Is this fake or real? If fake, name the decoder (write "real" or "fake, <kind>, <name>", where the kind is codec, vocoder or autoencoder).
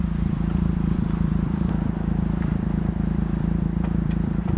fake, vocoder, BigVGAN v2